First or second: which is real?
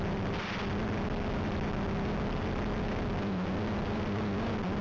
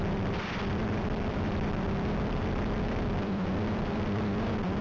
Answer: first